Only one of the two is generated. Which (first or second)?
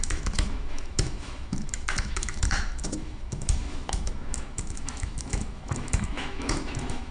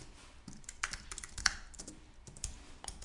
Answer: first